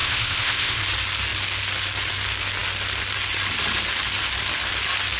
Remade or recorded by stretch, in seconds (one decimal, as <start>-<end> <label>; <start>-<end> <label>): 0.0-0.8 remade; 0.8-5.2 recorded